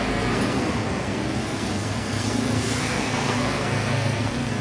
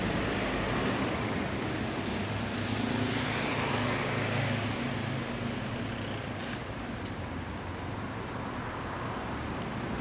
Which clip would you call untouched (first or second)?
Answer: second